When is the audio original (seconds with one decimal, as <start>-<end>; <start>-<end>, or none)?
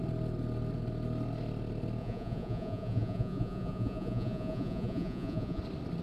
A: 0.0-2.0; 5.6-6.0